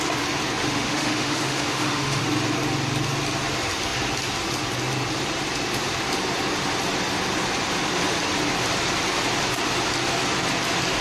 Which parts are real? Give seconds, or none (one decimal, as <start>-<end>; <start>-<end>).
0.0-0.6; 2.2-11.0